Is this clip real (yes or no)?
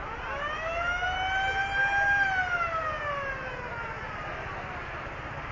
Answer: yes